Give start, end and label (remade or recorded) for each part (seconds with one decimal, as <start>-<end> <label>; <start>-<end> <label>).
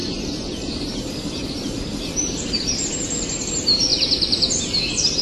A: 0.0-2.8 remade; 2.8-3.9 recorded; 3.9-5.2 remade